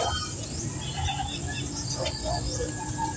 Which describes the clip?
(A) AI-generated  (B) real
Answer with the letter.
B